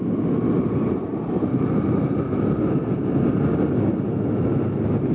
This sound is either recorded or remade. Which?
recorded